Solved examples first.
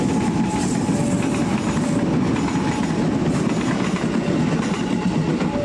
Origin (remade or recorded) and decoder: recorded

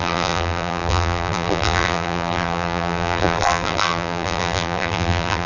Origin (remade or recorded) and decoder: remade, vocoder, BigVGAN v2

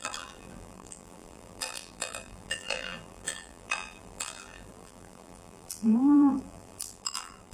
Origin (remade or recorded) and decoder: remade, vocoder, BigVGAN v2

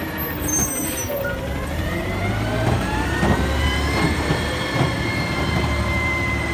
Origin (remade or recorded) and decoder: remade, vocoder, BigVGAN v2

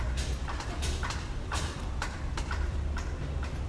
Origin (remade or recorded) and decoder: remade, vocoder, BigVGAN v2